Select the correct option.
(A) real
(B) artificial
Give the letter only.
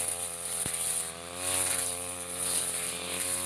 A